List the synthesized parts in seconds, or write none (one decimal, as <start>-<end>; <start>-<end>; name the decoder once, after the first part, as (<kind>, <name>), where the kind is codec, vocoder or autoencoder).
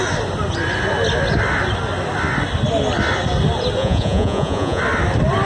3.8-4.8 (vocoder, Vocos)